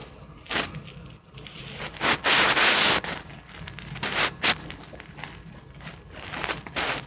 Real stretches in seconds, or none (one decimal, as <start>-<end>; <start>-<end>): 0.0-7.1